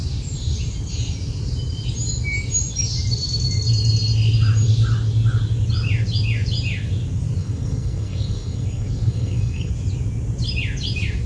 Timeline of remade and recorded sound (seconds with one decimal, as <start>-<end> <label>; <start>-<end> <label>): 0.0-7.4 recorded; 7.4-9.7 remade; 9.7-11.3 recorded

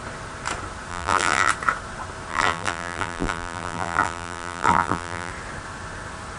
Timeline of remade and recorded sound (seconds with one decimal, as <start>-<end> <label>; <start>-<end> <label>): 0.0-0.9 recorded; 0.9-1.5 remade; 1.5-2.3 recorded; 2.3-5.3 remade; 5.3-6.4 recorded

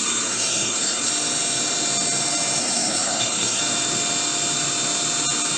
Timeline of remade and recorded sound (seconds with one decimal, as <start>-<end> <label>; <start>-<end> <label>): 0.0-1.1 remade; 1.1-2.6 recorded; 2.6-3.6 remade; 3.6-5.6 recorded

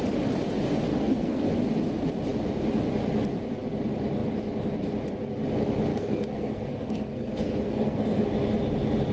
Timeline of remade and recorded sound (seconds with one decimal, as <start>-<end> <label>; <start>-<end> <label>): 0.0-0.9 recorded; 0.9-1.5 remade; 1.5-5.9 recorded; 5.9-8.3 remade; 8.3-9.1 recorded

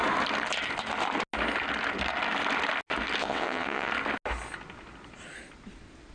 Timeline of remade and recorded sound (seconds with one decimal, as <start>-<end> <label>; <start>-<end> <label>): 0.0-3.2 recorded; 3.2-3.9 remade; 3.9-6.1 recorded

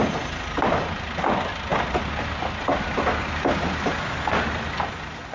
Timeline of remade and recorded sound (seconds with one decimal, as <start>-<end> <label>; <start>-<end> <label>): 0.0-5.3 recorded